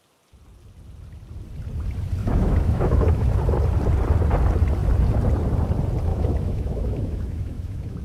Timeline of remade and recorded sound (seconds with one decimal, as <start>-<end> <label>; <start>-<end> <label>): 0.0-2.2 recorded; 2.2-3.3 remade; 3.3-6.1 recorded; 6.1-8.0 remade